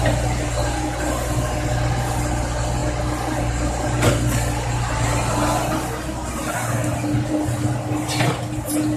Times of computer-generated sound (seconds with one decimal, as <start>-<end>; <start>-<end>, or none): none